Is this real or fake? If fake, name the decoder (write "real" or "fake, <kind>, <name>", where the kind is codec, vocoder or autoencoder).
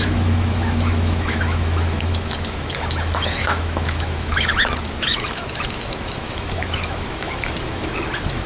fake, autoencoder, DAC-VAE